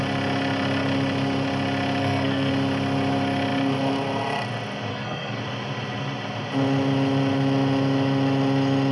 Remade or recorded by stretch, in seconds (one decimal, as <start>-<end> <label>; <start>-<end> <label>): 0.0-2.0 recorded; 2.0-2.5 remade; 2.5-4.9 recorded; 4.9-5.4 remade; 5.4-8.9 recorded